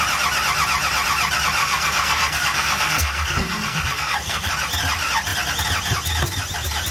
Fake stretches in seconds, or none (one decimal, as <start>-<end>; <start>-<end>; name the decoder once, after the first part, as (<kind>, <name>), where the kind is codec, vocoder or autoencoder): 1.6-4.5 (codec, SNAC)